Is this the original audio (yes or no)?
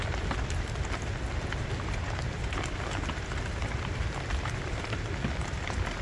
yes